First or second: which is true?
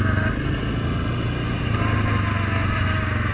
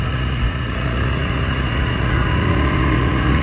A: first